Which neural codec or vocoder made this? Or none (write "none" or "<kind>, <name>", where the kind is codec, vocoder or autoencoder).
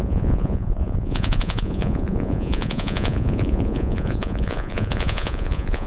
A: vocoder, Vocos